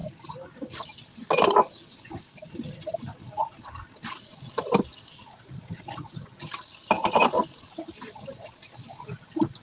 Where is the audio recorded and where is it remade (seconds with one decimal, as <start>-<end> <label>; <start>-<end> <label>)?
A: 0.0-4.4 recorded; 4.4-9.6 remade